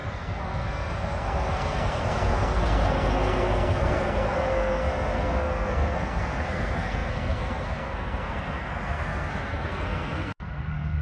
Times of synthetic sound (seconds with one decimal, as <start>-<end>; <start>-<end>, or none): 0.0-11.0